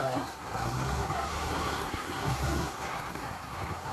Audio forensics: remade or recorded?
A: remade